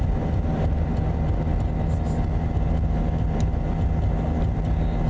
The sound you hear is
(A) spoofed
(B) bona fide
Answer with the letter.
B